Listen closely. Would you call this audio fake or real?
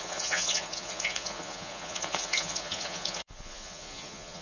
fake